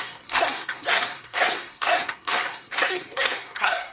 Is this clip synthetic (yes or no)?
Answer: yes